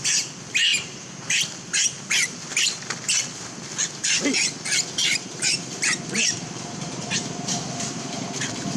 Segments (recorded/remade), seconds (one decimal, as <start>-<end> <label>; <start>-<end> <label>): 0.0-0.7 recorded; 0.7-2.9 remade; 2.9-5.0 recorded; 5.0-8.2 remade; 8.2-8.8 recorded